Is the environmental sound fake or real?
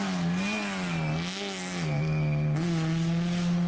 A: real